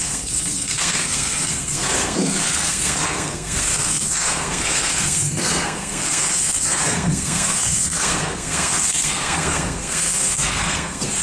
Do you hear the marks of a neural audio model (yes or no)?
yes